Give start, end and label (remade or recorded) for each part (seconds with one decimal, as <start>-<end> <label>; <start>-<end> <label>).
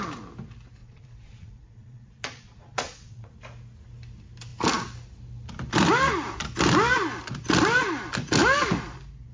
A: 0.0-0.8 recorded; 0.8-3.3 remade; 3.3-9.3 recorded